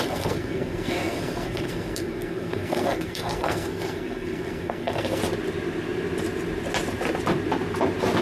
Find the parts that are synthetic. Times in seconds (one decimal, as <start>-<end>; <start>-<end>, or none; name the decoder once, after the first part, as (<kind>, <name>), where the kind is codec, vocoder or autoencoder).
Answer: 0.0-5.2 (codec, SNAC)